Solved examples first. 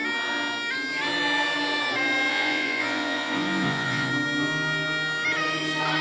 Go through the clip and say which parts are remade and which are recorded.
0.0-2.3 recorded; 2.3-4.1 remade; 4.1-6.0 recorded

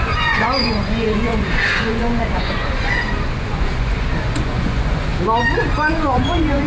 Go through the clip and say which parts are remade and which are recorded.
0.0-5.1 remade; 5.1-5.9 recorded; 5.9-6.7 remade

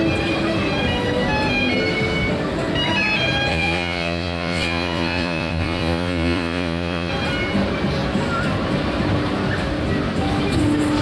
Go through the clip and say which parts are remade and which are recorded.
0.0-3.5 recorded; 3.5-7.1 remade; 7.1-11.0 recorded

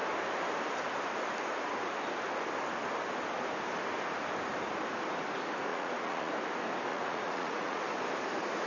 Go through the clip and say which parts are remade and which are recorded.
0.0-5.7 recorded; 5.7-6.3 remade; 6.3-6.9 recorded; 6.9-7.8 remade; 7.8-8.7 recorded

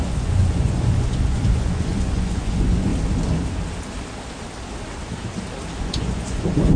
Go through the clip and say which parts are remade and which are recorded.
0.0-2.9 remade; 2.9-5.8 recorded; 5.8-6.8 remade

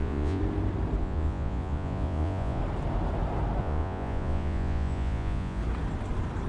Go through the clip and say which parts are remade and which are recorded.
0.0-0.4 remade; 0.4-1.0 recorded; 1.0-2.6 remade; 2.6-3.6 recorded; 3.6-5.6 remade; 5.6-6.5 recorded